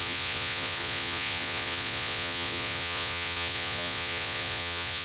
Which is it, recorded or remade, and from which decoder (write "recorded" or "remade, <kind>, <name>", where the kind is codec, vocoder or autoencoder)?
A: remade, vocoder, Vocos